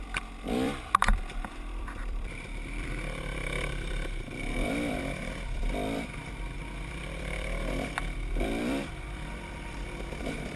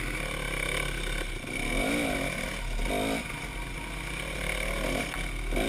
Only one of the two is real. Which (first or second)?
second